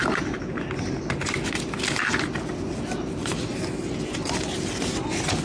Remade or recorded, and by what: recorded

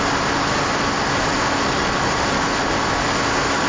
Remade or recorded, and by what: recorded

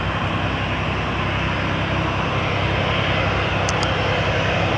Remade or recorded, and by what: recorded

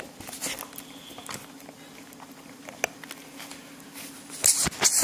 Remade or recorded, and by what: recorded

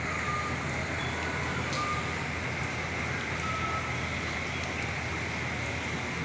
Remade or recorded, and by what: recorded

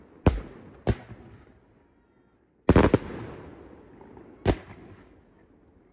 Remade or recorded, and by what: recorded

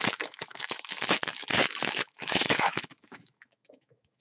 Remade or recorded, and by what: remade, autoencoder, DAC-VAE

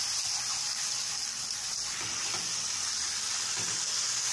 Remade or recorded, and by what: recorded